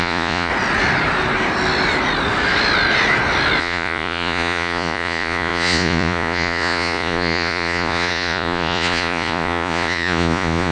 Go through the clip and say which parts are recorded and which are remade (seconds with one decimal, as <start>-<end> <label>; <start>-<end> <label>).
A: 0.0-0.5 remade; 0.5-3.6 recorded; 3.6-10.7 remade

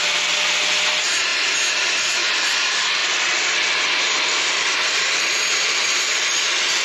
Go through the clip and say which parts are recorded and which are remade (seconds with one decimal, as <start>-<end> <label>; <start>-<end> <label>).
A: 0.0-6.8 recorded